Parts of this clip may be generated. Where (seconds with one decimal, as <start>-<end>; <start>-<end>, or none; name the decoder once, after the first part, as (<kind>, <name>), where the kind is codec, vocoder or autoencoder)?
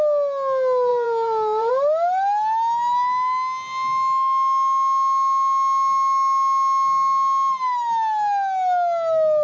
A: 0.9-1.7 (vocoder, BigVGAN v2)